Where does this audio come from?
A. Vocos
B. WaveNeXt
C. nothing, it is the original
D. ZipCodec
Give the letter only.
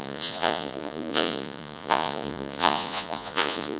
A